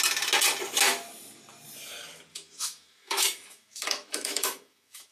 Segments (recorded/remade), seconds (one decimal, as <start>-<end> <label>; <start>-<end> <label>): 0.0-2.3 recorded; 2.3-5.1 remade